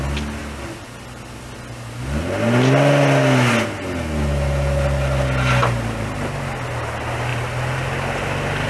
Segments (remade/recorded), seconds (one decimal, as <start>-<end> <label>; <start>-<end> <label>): 0.0-8.7 recorded